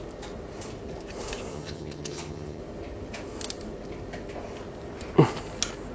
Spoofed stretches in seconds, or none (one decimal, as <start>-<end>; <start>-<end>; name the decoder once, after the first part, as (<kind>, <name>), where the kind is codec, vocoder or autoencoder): 1.5-2.6 (vocoder, HiFi-GAN)